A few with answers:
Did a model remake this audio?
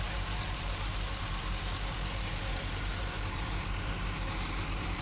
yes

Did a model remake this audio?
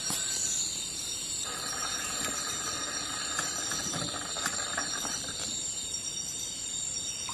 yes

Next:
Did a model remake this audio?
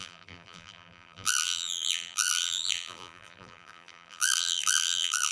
yes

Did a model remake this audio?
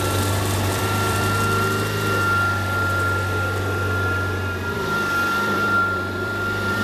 yes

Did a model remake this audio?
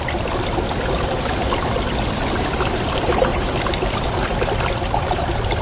yes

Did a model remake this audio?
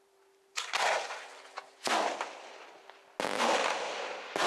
no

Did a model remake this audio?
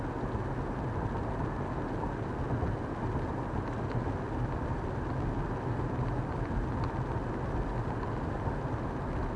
no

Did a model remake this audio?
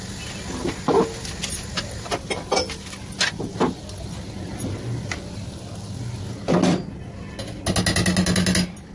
no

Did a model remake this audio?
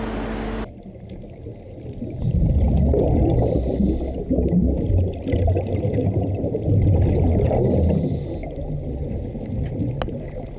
no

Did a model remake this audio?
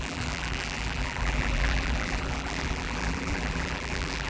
yes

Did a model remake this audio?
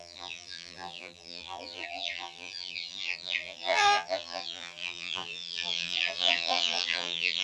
yes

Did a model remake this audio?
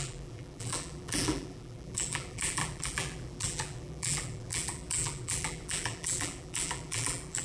yes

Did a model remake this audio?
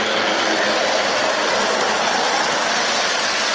no